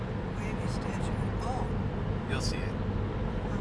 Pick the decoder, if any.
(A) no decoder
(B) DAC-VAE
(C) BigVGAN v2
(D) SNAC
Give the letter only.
A